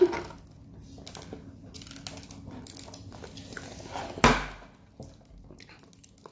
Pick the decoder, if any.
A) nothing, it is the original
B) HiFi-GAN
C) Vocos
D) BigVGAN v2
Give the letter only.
A